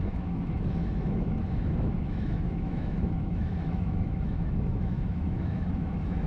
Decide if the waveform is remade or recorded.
remade